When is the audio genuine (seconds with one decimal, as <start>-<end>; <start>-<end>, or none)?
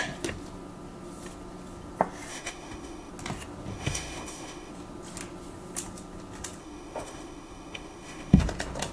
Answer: 0.0-2.3; 3.1-3.7; 4.7-6.6; 8.4-8.9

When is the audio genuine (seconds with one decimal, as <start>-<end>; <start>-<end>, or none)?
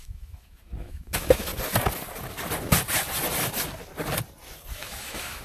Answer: 1.5-4.7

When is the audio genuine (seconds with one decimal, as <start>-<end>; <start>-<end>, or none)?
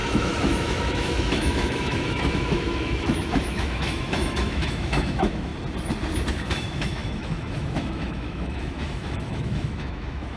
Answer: 5.5-6.3